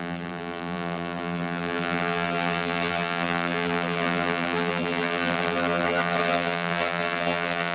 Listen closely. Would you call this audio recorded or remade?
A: remade